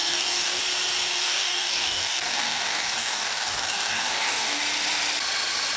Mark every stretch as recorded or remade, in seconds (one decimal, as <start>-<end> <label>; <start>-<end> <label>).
0.0-0.6 remade; 0.6-1.1 recorded; 1.1-4.6 remade; 4.6-5.8 recorded